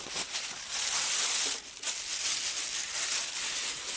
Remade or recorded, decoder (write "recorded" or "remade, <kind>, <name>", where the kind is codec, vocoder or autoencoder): recorded